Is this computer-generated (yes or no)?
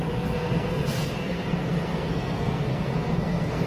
yes